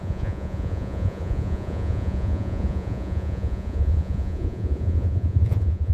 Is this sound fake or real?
fake